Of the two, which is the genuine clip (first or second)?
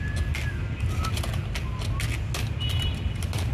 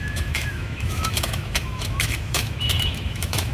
first